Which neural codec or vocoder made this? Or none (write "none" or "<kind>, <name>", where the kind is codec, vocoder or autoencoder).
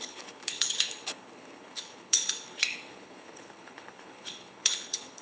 codec, HILCodec